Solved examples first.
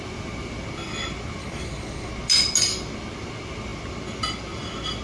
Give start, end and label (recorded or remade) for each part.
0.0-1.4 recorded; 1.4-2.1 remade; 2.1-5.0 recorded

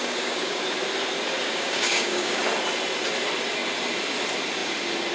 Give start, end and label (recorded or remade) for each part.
0.0-0.6 remade; 0.6-1.5 recorded; 1.5-2.4 remade; 2.4-5.1 recorded

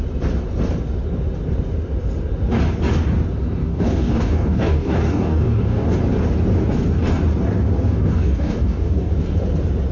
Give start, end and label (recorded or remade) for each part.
0.0-3.6 recorded; 3.6-6.0 remade; 6.0-7.9 recorded; 7.9-9.1 remade; 9.1-9.9 recorded

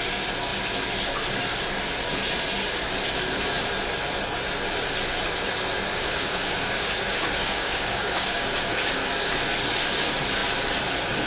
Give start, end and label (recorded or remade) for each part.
0.0-5.9 recorded; 5.9-8.5 remade; 8.5-11.3 recorded